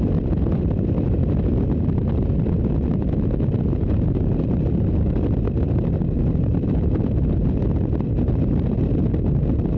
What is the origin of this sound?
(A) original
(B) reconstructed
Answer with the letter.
A